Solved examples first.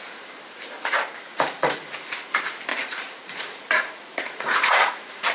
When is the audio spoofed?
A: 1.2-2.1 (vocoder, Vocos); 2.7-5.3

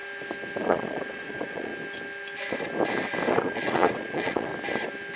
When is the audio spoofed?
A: 0.6-1.7 (vocoder, Vocos); 3.4-4.5